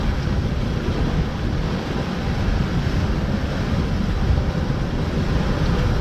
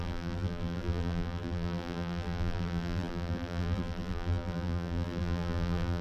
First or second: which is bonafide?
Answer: first